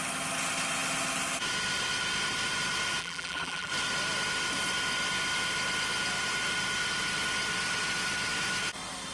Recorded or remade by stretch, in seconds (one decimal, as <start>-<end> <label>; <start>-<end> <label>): 0.0-3.0 recorded; 3.0-3.7 remade; 3.7-9.1 recorded